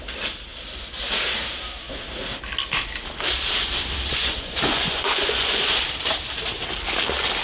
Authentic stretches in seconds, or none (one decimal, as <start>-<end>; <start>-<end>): 0.0-4.1; 5.7-7.4